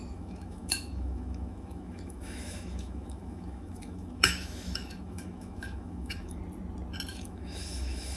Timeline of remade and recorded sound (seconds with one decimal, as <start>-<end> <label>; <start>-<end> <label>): 0.0-6.4 remade; 6.4-7.1 recorded; 7.1-8.2 remade